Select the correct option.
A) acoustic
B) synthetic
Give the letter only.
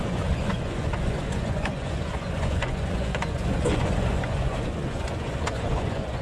B